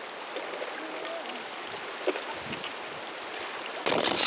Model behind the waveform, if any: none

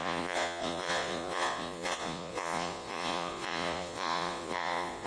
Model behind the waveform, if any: vocoder, Vocos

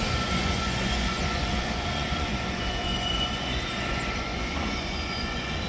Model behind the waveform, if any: vocoder, Vocos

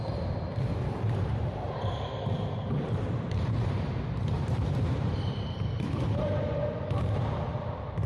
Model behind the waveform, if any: vocoder, BigVGAN v2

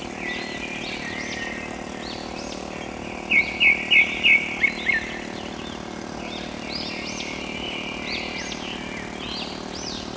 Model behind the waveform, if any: none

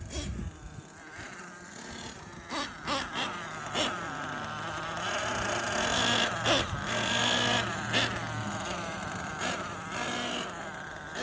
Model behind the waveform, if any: none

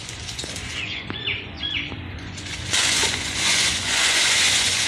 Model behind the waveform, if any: vocoder, Vocos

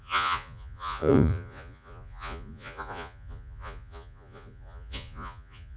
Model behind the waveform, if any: vocoder, Vocos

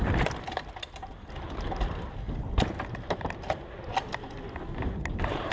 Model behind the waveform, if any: none